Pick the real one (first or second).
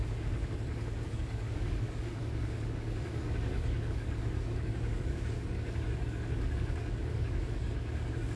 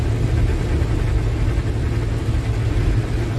second